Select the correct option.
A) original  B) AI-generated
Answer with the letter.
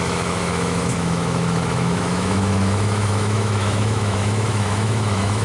B